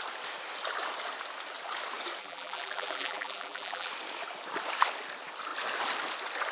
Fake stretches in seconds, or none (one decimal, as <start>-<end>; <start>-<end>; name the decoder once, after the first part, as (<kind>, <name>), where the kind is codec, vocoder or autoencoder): 2.2-3.9 (vocoder, BigVGAN v2)